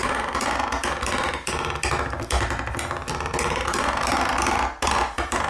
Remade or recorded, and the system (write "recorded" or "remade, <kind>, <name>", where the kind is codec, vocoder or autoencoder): recorded